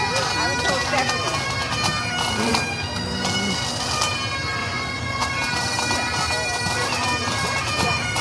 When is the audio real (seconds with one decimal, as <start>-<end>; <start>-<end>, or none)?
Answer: 0.0-4.6; 5.3-8.2